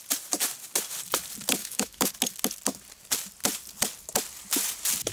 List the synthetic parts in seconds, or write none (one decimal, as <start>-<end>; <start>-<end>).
1.6-2.1